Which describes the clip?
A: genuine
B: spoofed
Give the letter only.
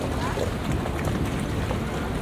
A